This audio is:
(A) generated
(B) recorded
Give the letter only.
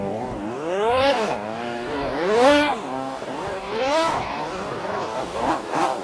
A